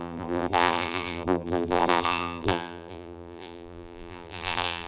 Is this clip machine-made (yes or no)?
yes